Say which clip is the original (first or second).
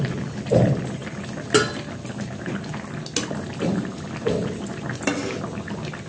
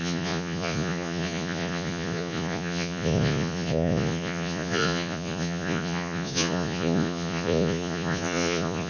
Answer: first